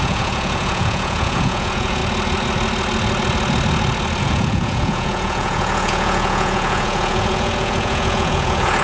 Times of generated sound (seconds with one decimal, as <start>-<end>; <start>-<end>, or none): 0.0-2.0; 4.2-8.8